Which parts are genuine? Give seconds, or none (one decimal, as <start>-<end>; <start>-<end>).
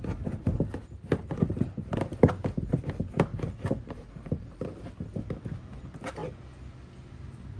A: 0.0-3.3; 4.8-7.6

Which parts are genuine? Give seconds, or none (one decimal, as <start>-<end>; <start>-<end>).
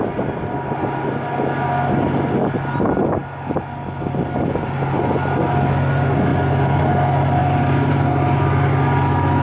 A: 0.0-7.4; 8.4-9.4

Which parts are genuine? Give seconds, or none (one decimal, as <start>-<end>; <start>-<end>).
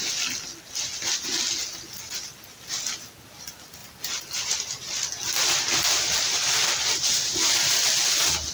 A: 0.0-3.8; 7.7-8.5